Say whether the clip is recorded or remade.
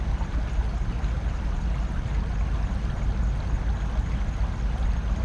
recorded